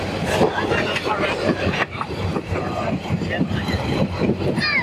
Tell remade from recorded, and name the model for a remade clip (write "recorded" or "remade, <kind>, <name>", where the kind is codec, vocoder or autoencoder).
remade, vocoder, BigVGAN v2